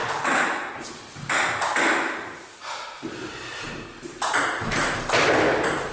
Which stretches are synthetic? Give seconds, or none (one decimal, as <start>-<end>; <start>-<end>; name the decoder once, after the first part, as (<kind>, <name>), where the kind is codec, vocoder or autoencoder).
none